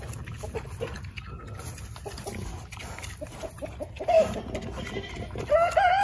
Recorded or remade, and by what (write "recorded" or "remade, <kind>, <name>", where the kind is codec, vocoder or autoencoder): recorded